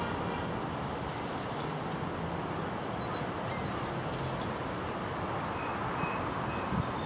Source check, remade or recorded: recorded